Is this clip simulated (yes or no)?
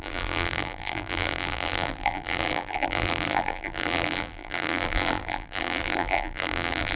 yes